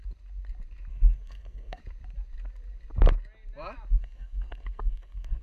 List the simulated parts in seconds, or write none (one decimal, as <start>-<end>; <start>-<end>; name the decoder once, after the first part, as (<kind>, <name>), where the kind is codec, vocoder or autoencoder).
0.9-1.8 (codec, SNAC); 3.9-5.4